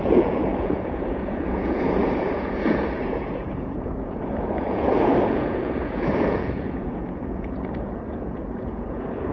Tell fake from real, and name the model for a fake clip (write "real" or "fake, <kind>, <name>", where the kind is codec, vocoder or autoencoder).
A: fake, vocoder, Vocos